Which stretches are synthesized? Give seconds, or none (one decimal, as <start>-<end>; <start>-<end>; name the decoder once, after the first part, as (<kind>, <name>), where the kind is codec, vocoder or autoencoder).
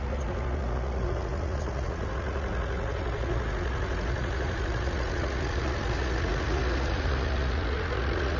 0.0-8.4 (vocoder, Vocos)